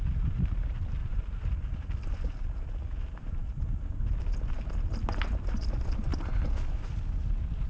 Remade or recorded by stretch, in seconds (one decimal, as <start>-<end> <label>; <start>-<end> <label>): 0.0-3.4 recorded; 3.4-4.1 remade; 4.1-7.7 recorded